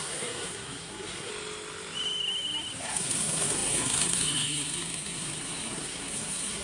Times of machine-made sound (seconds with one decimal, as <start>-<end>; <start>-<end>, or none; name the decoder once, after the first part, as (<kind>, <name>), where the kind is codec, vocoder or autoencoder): 0.0-1.3 (codec, SNAC); 2.8-6.6